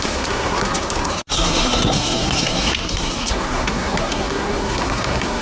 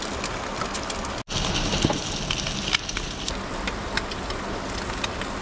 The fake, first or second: first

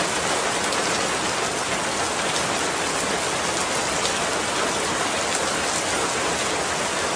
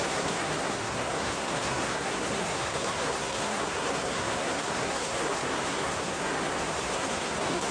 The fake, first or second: second